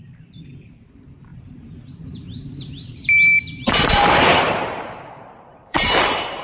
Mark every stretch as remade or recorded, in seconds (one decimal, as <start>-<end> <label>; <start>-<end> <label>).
0.0-6.4 remade